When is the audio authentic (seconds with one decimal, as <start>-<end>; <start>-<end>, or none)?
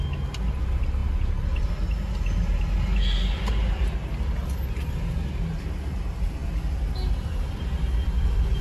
0.0-8.6